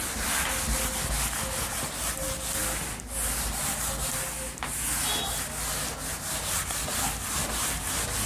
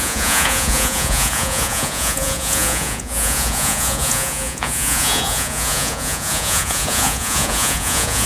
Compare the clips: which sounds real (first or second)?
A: first